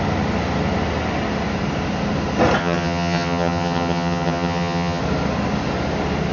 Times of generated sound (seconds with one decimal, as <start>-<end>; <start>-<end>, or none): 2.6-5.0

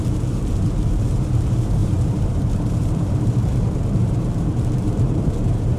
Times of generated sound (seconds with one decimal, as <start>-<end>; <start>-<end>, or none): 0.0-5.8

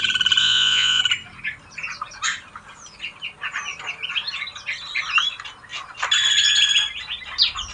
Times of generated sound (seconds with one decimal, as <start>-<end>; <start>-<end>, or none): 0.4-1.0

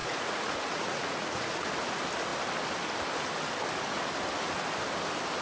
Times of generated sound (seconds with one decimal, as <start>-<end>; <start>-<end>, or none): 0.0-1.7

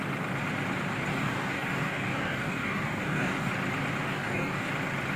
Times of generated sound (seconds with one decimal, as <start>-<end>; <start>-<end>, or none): 1.1-3.5; 4.0-4.7